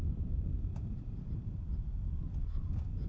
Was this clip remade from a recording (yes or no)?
no